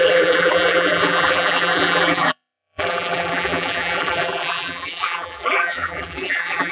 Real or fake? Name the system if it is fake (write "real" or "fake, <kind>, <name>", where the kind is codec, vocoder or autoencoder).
fake, vocoder, BigVGAN v2